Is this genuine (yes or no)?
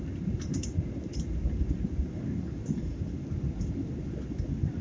yes